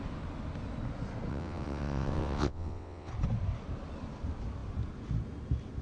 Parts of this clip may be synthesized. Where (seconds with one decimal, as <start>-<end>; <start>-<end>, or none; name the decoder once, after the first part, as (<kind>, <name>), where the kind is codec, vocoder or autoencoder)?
1.3-3.1 (vocoder, WaveNeXt)